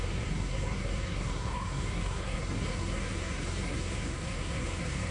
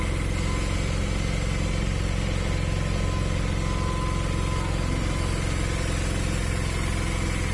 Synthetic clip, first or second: first